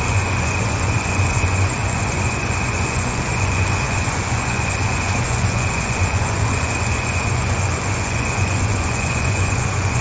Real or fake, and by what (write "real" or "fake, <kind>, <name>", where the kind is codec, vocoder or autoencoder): fake, vocoder, Vocos